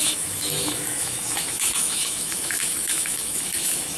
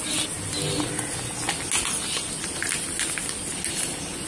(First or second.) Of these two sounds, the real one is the second